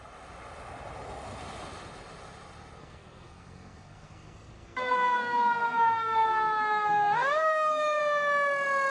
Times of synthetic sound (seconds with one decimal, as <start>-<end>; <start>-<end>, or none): 2.8-8.0

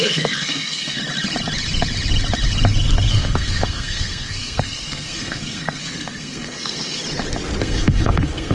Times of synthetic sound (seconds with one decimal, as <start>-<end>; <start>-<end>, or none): 0.0-1.0; 3.1-7.0; 7.6-8.5

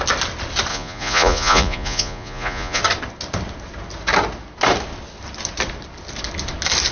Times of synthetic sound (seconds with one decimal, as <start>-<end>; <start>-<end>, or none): 0.7-2.8

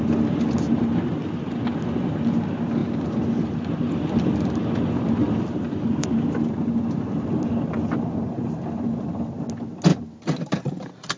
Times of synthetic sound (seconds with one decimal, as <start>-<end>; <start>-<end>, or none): 1.2-1.7; 2.8-6.1; 9.9-11.2

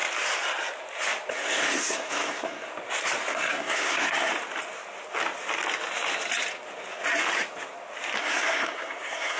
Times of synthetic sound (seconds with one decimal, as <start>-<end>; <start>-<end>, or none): 1.3-2.7; 3.3-4.3; 8.2-9.4

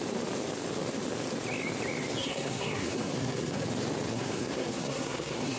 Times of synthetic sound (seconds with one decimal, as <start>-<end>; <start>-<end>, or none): 2.2-3.6; 4.1-5.6

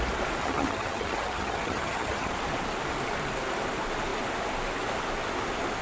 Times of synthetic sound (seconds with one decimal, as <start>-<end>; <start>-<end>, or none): 0.4-2.3